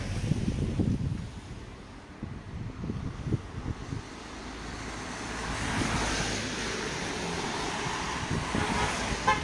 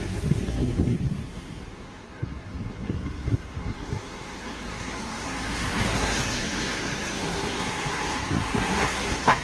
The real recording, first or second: first